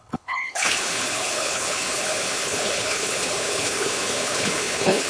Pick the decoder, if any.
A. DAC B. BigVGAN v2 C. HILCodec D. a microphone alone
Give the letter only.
C